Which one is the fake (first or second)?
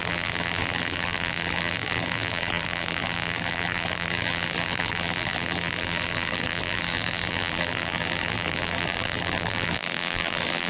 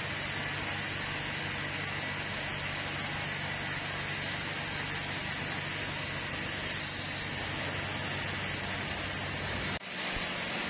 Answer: first